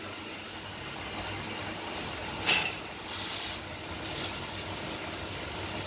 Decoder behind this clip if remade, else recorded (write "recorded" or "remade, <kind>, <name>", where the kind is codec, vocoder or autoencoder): recorded